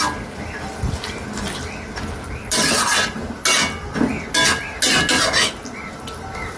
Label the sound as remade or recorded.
recorded